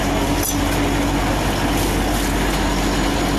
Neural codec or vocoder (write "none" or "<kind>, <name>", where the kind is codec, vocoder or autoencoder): none